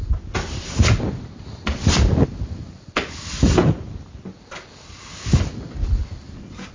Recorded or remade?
recorded